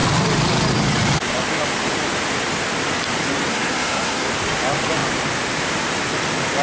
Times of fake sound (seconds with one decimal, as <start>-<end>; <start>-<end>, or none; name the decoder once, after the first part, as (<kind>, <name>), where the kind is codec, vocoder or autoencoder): 3.5-4.3 (codec, SNAC)